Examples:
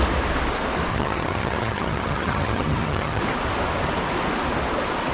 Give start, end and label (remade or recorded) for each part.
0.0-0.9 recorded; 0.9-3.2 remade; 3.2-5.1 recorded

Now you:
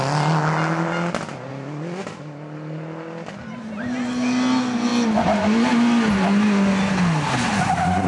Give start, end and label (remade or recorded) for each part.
0.0-8.1 recorded